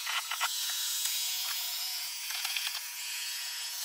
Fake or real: fake